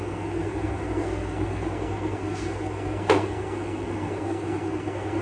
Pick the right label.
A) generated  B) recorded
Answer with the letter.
A